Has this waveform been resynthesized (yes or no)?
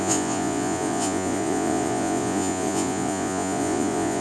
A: yes